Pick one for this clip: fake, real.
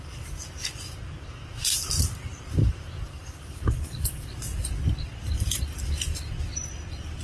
real